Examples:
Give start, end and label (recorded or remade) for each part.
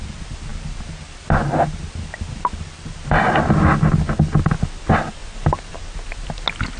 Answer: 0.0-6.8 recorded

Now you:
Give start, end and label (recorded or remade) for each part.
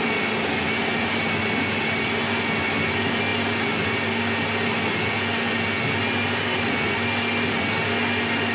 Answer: 0.0-8.5 recorded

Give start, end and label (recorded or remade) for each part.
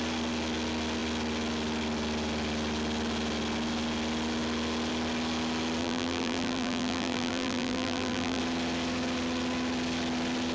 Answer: 0.0-5.8 recorded; 5.8-8.4 remade; 8.4-10.5 recorded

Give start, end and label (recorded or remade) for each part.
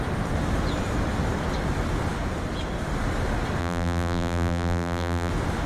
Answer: 0.0-3.6 recorded; 3.6-5.3 remade; 5.3-5.7 recorded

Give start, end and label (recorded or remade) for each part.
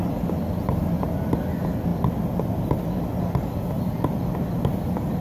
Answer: 0.0-5.2 recorded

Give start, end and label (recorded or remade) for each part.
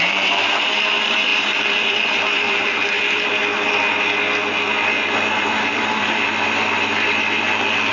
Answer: 0.0-3.4 remade; 3.4-5.3 recorded; 5.3-6.3 remade; 6.3-7.9 recorded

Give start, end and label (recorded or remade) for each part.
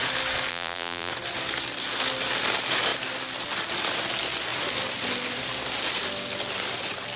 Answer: 0.0-0.5 recorded; 0.5-1.1 remade; 1.1-7.2 recorded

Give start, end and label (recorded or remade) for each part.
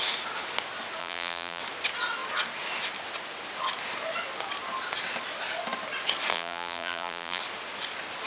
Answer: 0.0-1.0 recorded; 1.0-1.6 remade; 1.6-6.3 recorded; 6.3-7.4 remade; 7.4-8.3 recorded